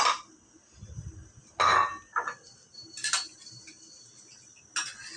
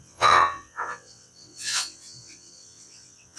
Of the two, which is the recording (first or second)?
first